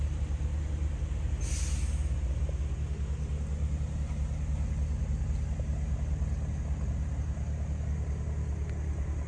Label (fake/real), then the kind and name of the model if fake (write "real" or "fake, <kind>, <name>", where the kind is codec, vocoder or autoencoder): real